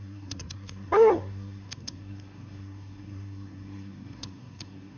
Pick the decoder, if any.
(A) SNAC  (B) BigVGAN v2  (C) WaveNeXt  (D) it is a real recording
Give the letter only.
A